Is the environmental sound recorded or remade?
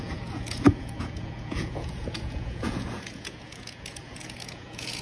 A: remade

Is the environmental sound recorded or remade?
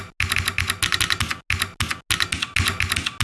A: recorded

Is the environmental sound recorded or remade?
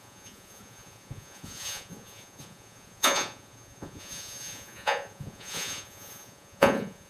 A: remade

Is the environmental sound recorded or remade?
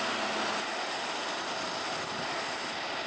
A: recorded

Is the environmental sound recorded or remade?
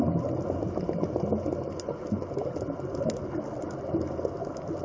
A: recorded